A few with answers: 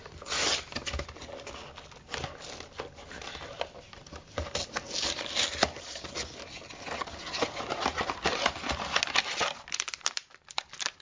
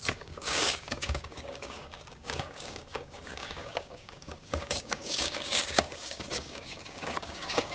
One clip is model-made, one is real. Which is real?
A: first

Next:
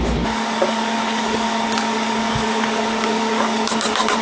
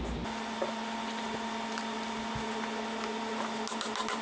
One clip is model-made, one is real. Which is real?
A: second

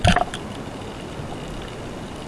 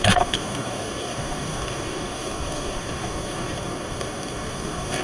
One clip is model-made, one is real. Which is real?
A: first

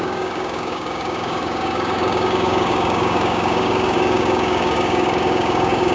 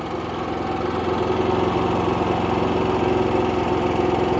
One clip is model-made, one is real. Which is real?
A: second